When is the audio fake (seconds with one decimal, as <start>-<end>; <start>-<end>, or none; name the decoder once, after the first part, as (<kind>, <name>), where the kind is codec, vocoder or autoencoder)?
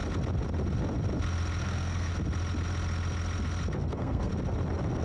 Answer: 1.6-2.1 (codec, SNAC); 3.8-4.3